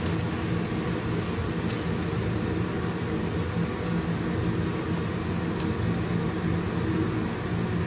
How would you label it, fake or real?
real